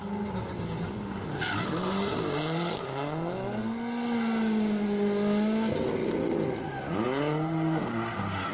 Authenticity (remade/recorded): recorded